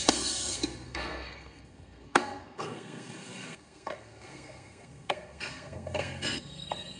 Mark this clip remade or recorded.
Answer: remade